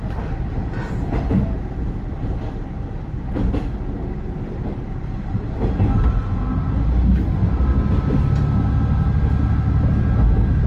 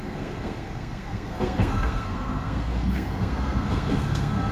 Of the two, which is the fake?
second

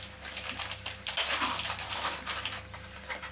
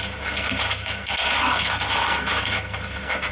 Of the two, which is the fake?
second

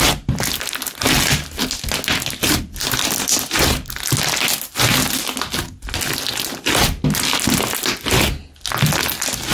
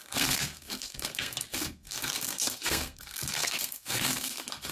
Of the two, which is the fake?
second